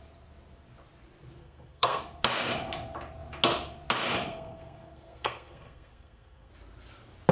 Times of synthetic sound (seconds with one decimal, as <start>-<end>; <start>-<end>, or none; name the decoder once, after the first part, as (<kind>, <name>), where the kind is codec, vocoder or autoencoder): 1.4-2.0 (codec, SNAC); 4.3-6.5